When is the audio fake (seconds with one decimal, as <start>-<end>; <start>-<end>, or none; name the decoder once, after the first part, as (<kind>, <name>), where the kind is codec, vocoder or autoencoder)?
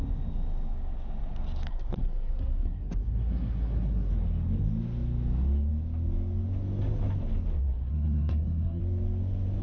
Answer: 1.7-4.1 (codec, SNAC); 7.6-8.8